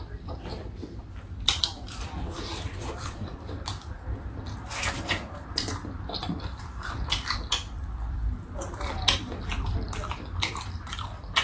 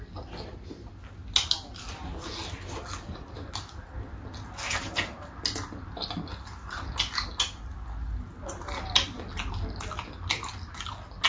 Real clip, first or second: second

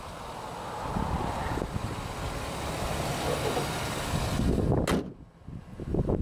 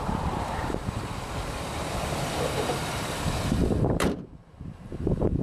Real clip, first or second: first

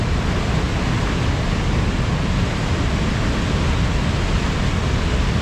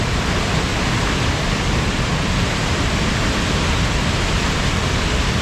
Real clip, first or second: first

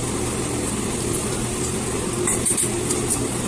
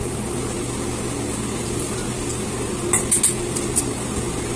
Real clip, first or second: second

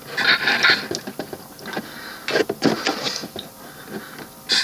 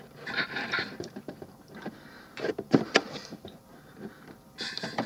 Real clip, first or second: first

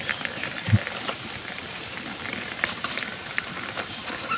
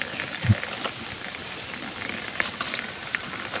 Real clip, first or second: second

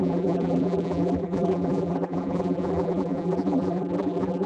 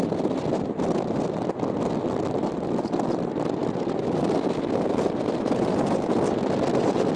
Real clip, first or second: second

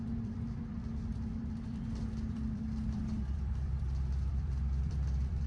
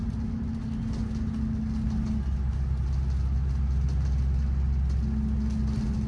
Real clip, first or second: second